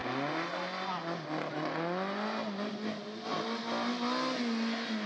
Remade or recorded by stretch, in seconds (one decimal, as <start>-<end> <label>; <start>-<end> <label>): 0.0-5.1 recorded